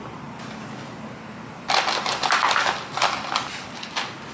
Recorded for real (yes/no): yes